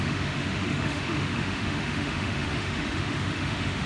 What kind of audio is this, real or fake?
fake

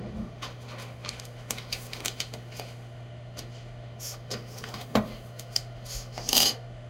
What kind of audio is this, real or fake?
fake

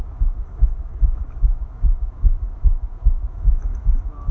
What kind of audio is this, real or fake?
fake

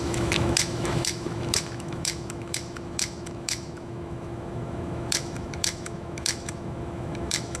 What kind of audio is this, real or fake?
fake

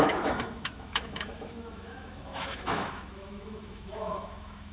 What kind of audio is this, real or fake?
fake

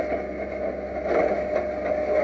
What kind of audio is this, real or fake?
real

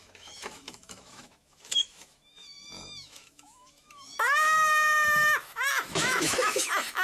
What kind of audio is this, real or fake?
fake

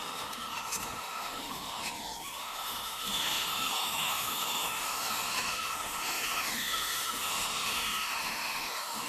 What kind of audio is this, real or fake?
fake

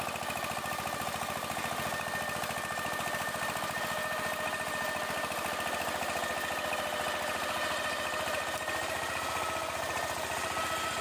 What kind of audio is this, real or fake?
real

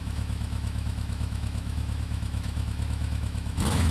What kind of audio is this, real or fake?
fake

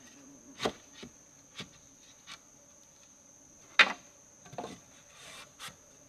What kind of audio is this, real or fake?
real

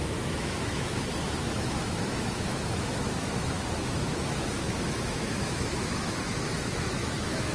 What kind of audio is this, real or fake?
fake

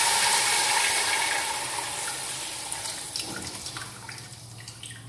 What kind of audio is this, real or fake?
real